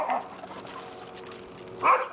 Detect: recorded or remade recorded